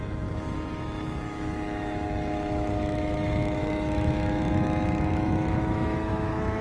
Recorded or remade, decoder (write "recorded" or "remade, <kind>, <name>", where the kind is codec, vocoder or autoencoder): remade, autoencoder, DAC-VAE